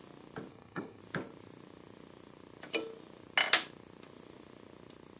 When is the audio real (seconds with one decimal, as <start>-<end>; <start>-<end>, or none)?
0.0-0.5; 1.0-5.2